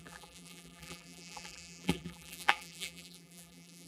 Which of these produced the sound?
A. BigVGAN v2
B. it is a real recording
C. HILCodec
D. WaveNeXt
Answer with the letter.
A